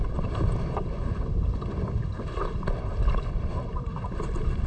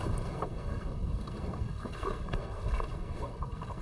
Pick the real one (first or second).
first